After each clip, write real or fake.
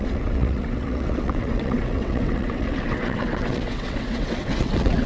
fake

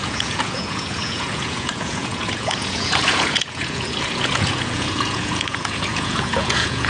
fake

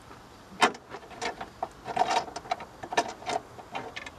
real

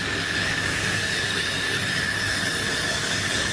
fake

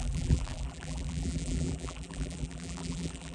fake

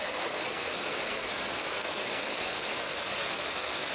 fake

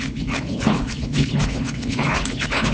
fake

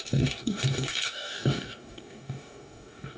fake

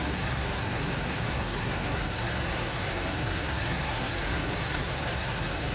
fake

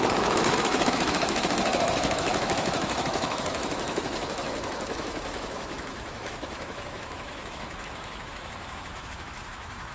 fake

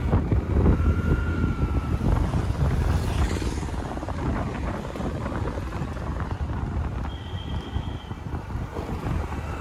real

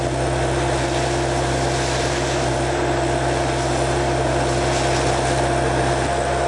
real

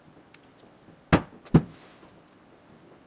real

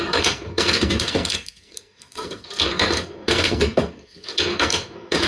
fake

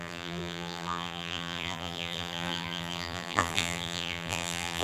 fake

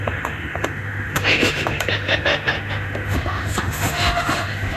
fake